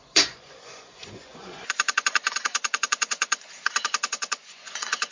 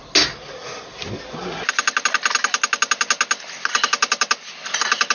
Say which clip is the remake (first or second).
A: first